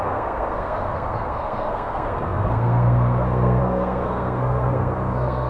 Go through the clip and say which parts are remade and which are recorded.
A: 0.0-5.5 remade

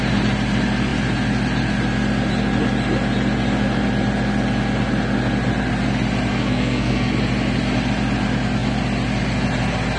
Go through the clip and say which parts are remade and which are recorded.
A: 0.0-6.3 recorded; 6.3-7.1 remade; 7.1-10.0 recorded